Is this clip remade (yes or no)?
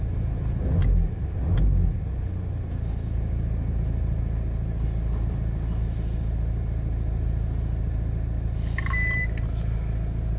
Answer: no